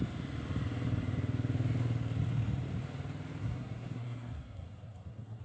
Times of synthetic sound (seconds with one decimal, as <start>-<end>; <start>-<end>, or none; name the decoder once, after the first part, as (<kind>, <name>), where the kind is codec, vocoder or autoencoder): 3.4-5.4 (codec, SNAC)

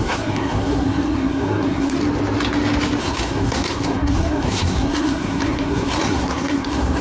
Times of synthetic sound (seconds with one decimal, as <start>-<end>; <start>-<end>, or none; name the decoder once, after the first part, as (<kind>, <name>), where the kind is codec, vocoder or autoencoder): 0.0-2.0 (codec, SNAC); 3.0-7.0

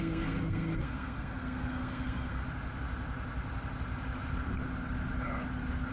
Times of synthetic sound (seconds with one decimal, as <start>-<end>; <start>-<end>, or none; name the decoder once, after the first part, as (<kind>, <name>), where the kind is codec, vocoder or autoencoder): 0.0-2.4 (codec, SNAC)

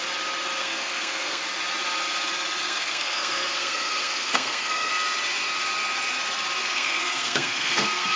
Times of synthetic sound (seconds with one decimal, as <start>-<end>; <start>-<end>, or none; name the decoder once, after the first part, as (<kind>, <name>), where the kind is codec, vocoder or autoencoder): 0.6-1.4 (codec, SNAC); 2.6-4.9; 6.6-8.2

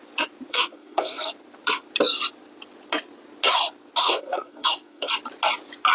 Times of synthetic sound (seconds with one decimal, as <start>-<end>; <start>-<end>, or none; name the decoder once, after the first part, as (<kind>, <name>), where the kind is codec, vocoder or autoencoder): 0.5-1.3 (codec, SNAC); 4.0-5.1

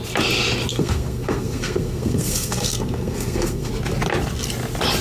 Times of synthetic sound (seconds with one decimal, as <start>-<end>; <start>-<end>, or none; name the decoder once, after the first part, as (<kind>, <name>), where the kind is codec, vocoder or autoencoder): 0.7-3.7 (codec, SNAC)

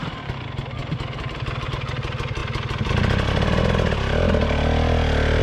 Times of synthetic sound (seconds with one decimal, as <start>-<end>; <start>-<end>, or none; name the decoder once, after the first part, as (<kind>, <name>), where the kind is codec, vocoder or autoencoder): none

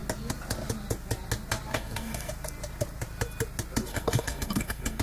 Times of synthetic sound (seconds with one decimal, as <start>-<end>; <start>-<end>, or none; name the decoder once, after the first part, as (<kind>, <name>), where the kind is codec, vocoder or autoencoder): 1.7-2.3 (codec, SNAC); 3.9-5.0